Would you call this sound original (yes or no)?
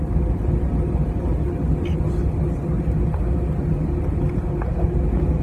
yes